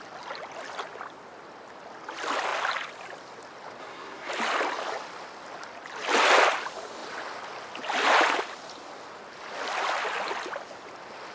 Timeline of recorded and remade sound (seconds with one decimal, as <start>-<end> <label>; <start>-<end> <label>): 0.0-3.8 recorded; 3.8-4.3 remade; 4.3-11.3 recorded